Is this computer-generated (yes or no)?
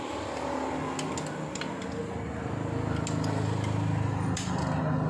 no